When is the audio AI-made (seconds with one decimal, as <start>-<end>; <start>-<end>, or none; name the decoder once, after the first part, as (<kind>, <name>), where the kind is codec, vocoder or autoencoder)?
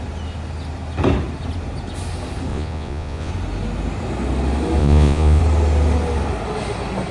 2.5-3.3 (vocoder, Vocos); 4.8-5.4